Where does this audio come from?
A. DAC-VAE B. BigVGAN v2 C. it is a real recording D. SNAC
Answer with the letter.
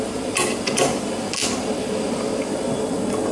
C